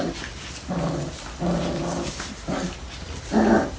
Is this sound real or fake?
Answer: real